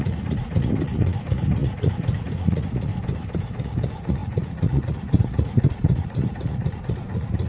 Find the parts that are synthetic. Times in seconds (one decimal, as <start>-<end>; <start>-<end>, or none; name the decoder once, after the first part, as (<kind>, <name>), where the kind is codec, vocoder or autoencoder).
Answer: 0.0-2.9 (vocoder, Vocos); 3.6-7.5